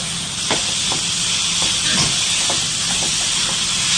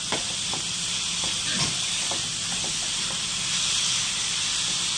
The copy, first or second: second